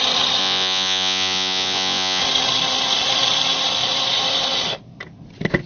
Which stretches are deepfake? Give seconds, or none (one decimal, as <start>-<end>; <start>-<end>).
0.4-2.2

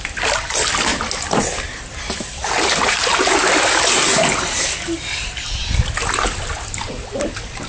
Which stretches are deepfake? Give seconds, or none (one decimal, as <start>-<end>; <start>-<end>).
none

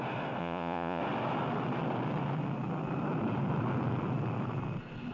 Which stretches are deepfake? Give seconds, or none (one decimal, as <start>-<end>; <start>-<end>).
0.4-1.0

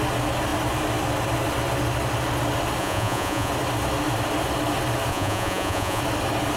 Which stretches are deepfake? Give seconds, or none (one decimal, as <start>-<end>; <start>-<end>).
2.8-3.5; 5.1-6.0

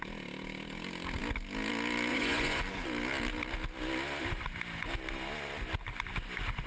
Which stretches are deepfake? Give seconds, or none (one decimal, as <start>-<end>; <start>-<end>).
2.1-2.6

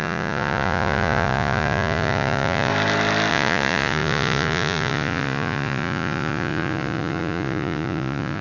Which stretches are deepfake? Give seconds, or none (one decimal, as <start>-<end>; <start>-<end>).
0.0-2.7; 3.3-8.4

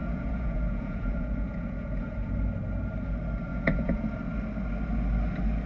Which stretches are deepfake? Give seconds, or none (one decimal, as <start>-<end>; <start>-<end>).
0.0-2.3; 3.5-4.0

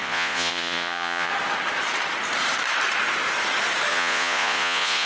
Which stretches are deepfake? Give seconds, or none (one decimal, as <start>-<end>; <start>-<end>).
0.0-1.3; 3.9-5.1